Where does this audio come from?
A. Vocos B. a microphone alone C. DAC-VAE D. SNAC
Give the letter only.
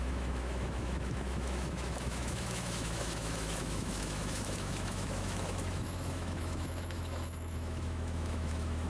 C